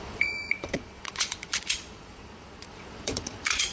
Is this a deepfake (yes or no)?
yes